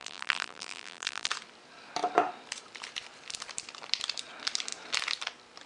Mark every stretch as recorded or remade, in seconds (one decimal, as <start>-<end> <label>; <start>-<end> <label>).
0.0-1.3 remade; 1.3-5.7 recorded